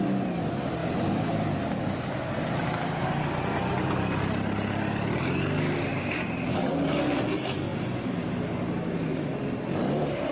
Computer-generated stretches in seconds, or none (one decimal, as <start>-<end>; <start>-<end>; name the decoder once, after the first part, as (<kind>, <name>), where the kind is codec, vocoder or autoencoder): 5.9-6.7 (vocoder, BigVGAN v2); 7.7-8.5